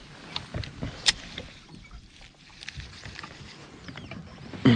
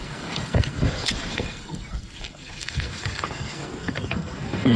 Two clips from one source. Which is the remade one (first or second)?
second